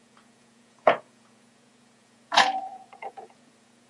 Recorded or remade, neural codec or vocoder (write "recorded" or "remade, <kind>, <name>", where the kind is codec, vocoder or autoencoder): remade, vocoder, Vocos